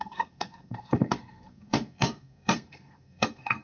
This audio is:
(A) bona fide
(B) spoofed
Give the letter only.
B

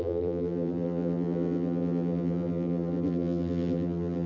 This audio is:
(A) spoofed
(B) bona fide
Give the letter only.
A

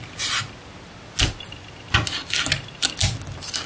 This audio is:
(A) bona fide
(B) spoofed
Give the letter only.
A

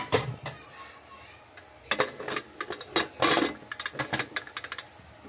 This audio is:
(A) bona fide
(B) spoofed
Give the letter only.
A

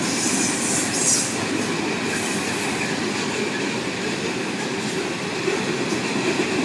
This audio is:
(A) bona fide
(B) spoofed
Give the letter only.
B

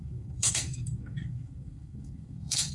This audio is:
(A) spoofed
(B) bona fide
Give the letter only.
A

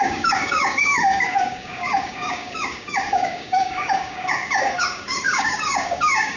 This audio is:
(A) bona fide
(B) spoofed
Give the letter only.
B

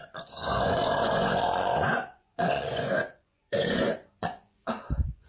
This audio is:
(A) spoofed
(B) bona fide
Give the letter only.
A